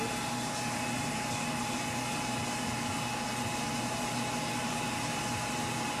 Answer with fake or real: real